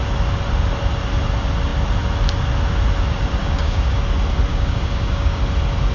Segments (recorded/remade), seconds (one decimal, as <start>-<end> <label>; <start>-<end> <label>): 0.0-3.4 recorded; 3.4-4.0 remade; 4.0-4.5 recorded; 4.5-5.4 remade; 5.4-5.9 recorded